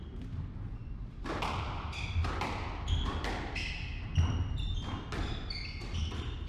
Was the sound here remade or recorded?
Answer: recorded